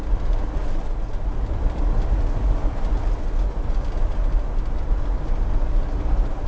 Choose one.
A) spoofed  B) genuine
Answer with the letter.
B